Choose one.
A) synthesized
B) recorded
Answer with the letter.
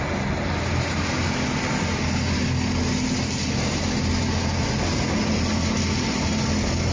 B